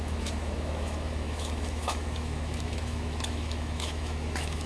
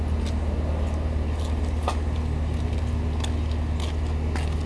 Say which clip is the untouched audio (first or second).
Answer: second